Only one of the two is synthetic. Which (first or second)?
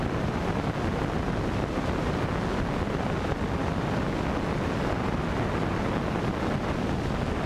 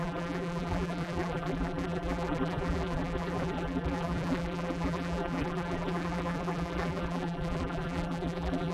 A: second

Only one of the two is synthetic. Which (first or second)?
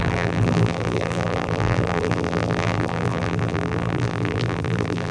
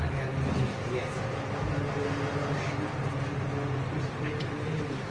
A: first